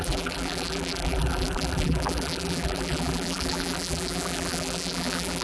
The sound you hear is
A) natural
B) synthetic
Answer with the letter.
B